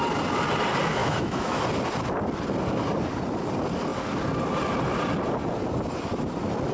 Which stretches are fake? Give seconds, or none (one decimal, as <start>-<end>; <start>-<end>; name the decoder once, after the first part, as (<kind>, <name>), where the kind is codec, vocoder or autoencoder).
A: 1.0-1.6 (autoencoder, DAC-VAE)